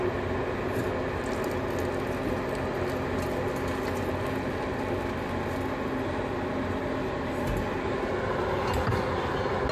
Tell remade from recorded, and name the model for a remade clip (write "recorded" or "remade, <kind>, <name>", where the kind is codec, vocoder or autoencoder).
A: recorded